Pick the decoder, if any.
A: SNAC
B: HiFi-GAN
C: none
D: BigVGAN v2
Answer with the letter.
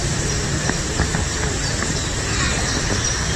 D